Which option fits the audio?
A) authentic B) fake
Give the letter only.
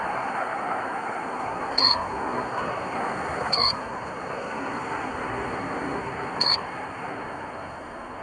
B